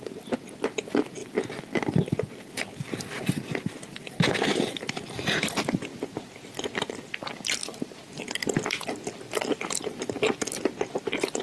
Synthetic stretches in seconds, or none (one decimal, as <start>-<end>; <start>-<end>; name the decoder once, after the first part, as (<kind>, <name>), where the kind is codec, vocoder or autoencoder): 1.2-2.5 (vocoder, BigVGAN v2); 3.9-4.8